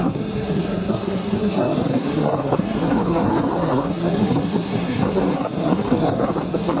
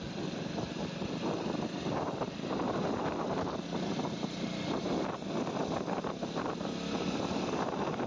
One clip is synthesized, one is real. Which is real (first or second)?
second